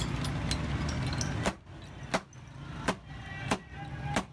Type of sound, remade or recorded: recorded